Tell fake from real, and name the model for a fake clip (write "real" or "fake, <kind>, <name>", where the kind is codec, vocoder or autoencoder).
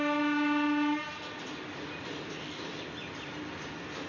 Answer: real